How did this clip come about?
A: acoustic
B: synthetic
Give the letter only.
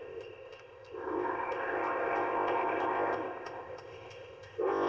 B